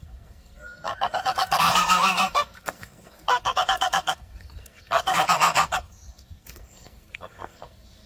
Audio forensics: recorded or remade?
remade